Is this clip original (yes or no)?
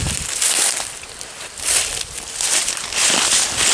yes